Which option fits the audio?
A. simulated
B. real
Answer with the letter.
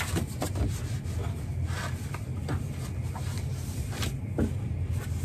B